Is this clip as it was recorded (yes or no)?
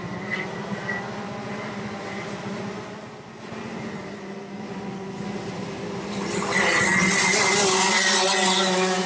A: yes